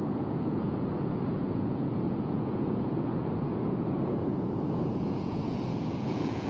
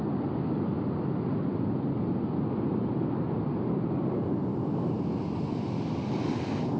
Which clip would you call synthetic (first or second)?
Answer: first